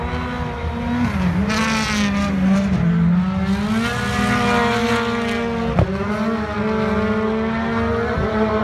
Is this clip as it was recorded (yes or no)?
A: yes